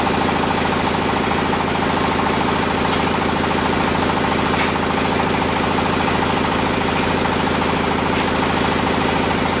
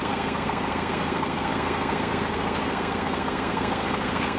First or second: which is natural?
first